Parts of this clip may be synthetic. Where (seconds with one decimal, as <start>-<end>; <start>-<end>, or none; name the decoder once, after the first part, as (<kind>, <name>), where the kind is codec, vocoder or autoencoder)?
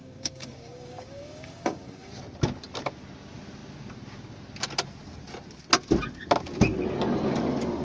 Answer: 0.0-2.1 (codec, DAC)